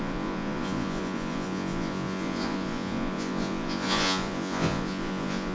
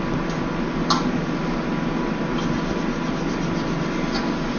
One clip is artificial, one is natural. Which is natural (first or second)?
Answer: second